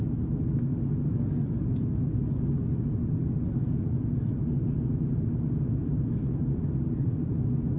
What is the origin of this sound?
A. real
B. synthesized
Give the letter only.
A